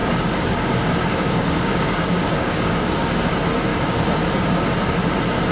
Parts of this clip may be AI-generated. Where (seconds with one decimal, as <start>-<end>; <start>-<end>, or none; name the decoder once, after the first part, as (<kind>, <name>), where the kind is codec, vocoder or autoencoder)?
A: 0.0-3.3 (codec, DAC); 3.7-4.3